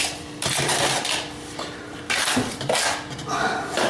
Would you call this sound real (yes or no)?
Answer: yes